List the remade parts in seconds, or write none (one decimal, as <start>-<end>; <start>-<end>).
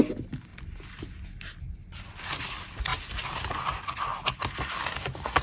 none